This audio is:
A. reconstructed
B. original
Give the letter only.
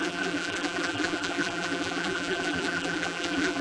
A